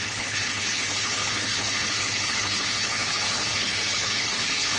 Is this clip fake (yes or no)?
yes